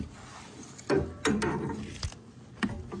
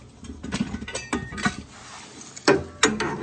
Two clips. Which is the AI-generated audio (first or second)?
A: first